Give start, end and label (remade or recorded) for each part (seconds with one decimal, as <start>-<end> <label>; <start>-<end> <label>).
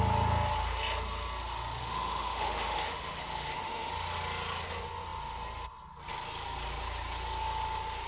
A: 0.0-1.8 recorded; 1.8-3.9 remade; 3.9-8.1 recorded